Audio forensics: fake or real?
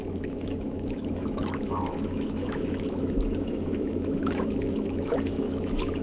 fake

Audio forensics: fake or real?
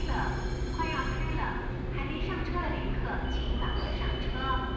real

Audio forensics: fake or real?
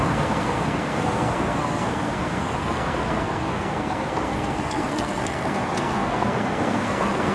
fake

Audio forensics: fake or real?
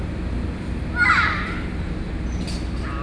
real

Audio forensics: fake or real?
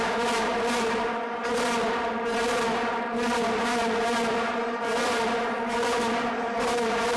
real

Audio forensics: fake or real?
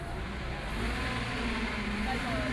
real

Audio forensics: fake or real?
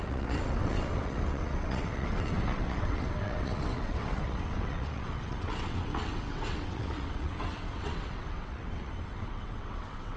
fake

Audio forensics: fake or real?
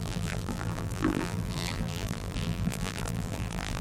fake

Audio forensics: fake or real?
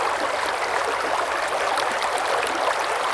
real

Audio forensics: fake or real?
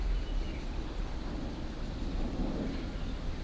real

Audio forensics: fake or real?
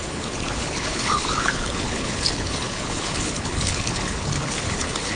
fake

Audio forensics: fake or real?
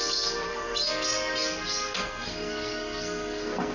fake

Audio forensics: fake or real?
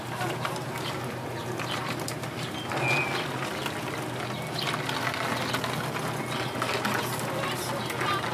real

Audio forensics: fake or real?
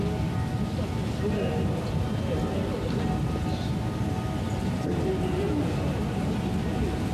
real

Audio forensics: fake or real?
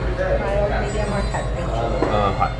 real